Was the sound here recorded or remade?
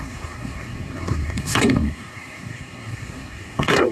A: remade